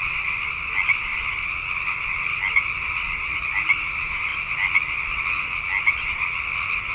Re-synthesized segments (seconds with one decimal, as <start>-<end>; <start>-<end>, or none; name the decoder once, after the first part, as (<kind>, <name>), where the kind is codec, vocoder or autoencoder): none